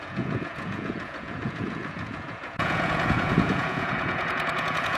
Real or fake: fake